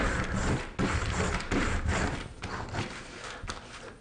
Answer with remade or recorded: recorded